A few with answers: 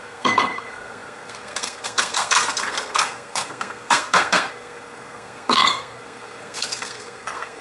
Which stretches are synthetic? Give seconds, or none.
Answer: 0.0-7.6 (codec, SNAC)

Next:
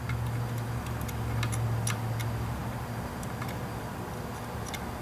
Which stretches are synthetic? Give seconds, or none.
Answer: none